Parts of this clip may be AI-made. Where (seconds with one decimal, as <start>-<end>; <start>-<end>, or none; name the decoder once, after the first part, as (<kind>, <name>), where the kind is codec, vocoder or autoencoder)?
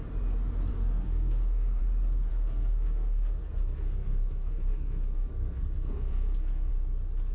0.7-1.8 (codec, SNAC); 2.3-6.7